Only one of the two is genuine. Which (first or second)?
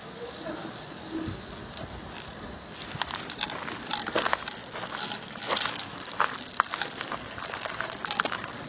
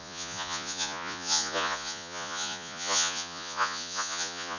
first